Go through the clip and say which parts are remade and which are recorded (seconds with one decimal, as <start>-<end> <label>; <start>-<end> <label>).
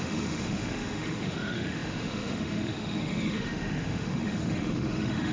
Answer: 0.0-5.3 remade